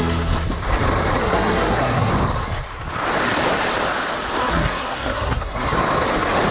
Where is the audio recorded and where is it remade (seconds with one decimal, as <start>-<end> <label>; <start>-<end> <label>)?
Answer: 0.0-1.2 recorded; 1.2-2.1 remade; 2.1-4.4 recorded; 4.4-5.8 remade; 5.8-6.5 recorded